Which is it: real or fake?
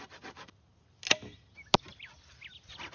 real